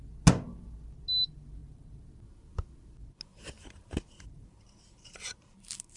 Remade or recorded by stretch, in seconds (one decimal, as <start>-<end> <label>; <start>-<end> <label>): 0.0-1.6 recorded; 1.6-2.1 remade; 2.1-3.3 recorded; 3.3-6.0 remade